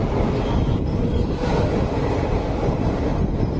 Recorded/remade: recorded